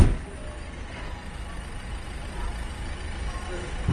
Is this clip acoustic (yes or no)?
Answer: yes